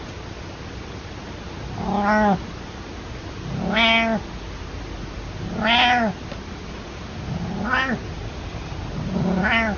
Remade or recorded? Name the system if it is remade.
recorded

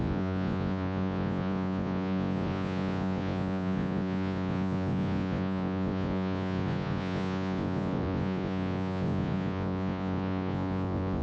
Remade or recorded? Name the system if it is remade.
remade, vocoder, Vocos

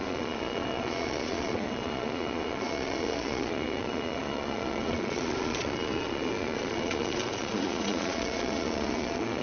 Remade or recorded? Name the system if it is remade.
remade, vocoder, Vocos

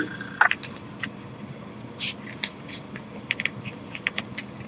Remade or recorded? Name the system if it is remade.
recorded